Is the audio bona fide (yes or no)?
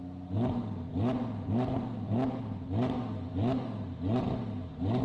yes